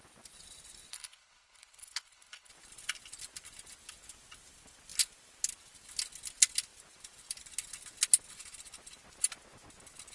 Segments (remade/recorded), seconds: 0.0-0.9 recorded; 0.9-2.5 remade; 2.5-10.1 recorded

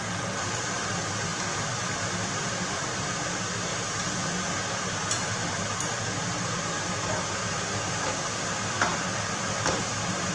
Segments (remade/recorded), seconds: 0.0-1.3 recorded; 1.3-2.4 remade; 2.4-10.3 recorded

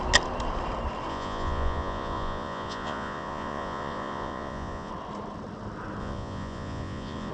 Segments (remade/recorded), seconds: 0.0-1.1 recorded; 1.1-4.9 remade; 4.9-6.0 recorded; 6.0-7.3 remade

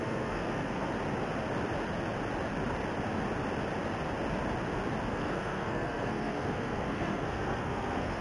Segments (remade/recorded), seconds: 0.0-0.9 remade; 0.9-5.1 recorded; 5.1-8.2 remade

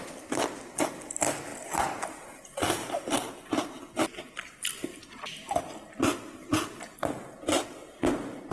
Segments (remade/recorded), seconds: 0.0-8.5 recorded

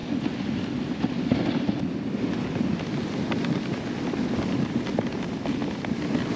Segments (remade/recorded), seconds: 0.0-5.6 recorded; 5.6-6.4 remade